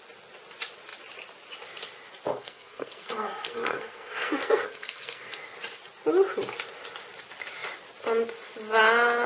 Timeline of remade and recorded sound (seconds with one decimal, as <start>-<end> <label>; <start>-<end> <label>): 0.0-2.3 recorded; 2.3-5.4 remade; 5.4-9.3 recorded